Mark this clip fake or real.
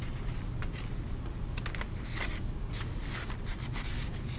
real